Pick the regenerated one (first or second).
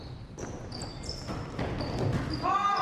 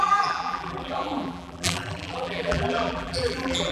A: second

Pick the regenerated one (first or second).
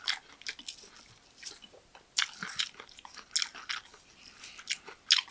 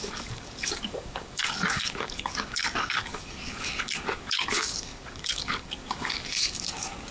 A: second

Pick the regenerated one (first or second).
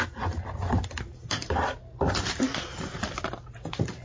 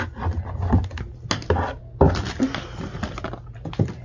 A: first